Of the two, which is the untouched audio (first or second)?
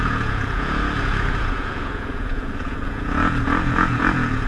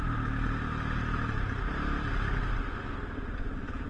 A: second